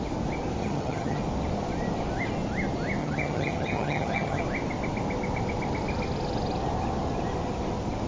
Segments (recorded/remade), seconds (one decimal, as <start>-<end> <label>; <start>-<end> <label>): 0.0-0.6 recorded; 0.6-1.2 remade; 1.2-3.0 recorded; 3.0-4.4 remade; 4.4-8.1 recorded